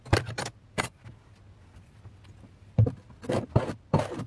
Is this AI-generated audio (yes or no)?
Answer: no